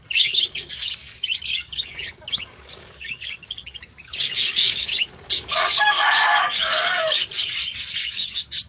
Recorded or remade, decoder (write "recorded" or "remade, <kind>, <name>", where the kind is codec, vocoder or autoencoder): remade, codec, DAC